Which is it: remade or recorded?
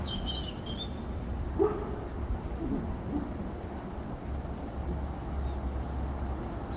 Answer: recorded